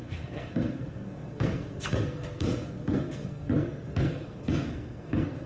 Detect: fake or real fake